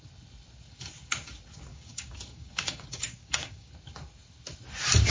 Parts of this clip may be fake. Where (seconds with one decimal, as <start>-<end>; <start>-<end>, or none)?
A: 1.7-3.7